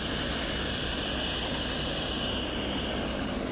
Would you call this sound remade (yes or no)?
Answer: no